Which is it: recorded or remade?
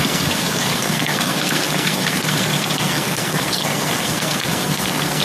remade